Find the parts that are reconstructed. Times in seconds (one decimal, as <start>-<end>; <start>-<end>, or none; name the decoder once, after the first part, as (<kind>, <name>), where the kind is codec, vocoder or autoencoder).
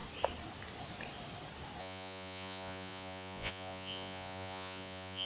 1.8-5.3 (vocoder, Vocos)